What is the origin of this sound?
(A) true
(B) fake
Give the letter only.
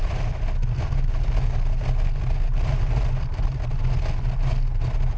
A